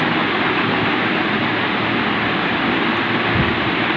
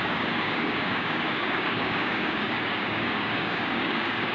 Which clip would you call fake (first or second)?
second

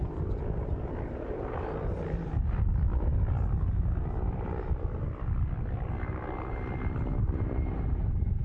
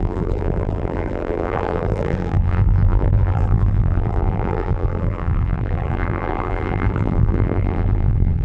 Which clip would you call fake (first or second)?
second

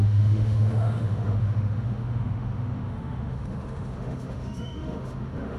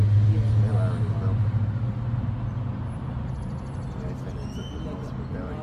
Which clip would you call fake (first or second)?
first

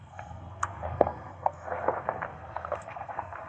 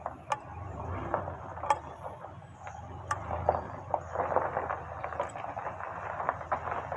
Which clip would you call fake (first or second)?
first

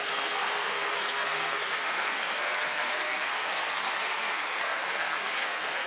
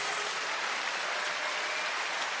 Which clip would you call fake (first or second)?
first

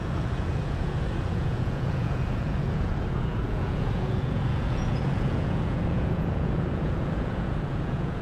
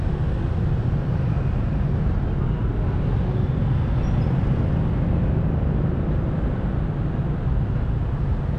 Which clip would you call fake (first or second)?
first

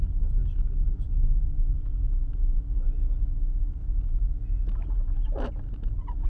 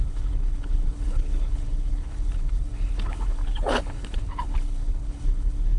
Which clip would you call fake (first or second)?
second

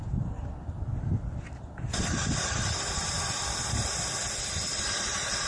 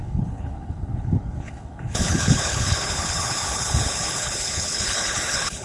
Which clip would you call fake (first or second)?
second